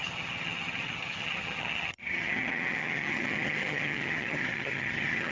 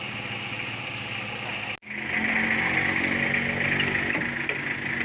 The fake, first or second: first